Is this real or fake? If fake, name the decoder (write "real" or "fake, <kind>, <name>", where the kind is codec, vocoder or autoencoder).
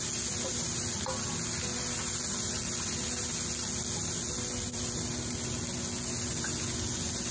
real